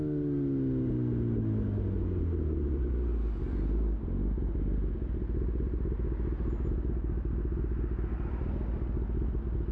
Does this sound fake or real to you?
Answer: real